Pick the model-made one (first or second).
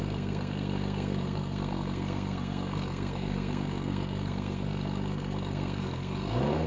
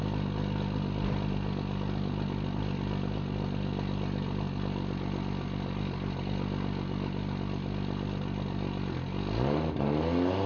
first